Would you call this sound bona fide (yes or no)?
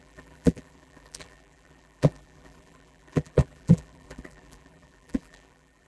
no